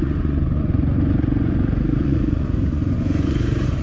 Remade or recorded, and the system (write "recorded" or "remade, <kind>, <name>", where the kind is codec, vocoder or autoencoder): remade, vocoder, Vocos